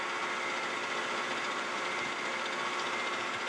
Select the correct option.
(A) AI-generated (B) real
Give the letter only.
B